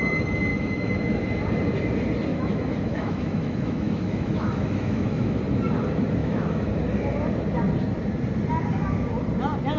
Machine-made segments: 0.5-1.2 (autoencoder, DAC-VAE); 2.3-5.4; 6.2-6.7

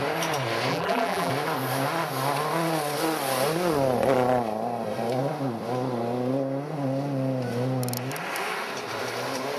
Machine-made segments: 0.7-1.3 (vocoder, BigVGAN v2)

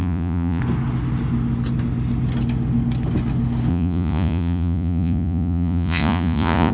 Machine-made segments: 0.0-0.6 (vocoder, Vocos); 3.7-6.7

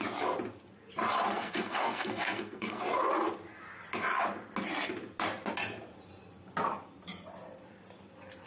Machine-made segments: 1.3-2.8 (codec, SNAC)